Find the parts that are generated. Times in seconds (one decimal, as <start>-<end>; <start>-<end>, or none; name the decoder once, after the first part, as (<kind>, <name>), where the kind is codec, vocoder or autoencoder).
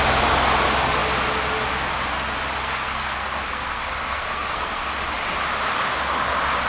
2.6-4.9 (codec, SNAC)